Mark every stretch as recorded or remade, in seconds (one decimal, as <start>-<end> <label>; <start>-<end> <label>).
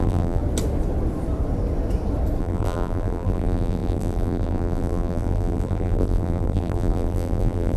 0.0-0.4 remade; 0.4-2.4 recorded; 2.4-7.8 remade